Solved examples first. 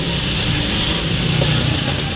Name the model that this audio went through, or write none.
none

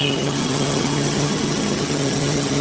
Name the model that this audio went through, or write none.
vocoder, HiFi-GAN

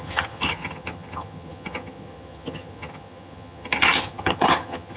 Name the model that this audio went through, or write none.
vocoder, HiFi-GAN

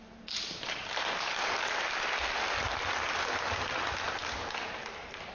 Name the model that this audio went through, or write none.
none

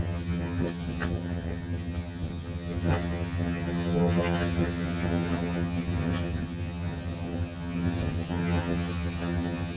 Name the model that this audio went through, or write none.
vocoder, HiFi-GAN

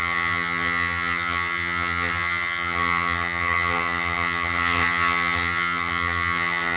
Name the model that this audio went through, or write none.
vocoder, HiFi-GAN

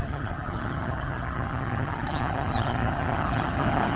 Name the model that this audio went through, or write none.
vocoder, HiFi-GAN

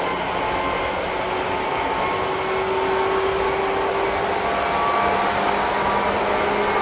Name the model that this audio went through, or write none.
none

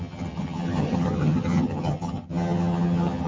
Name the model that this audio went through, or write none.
vocoder, HiFi-GAN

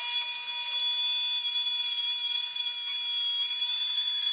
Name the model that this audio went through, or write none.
none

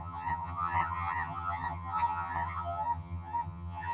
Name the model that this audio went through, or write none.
vocoder, HiFi-GAN